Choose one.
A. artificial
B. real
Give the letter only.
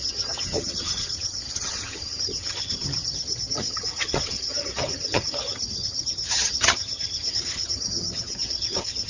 A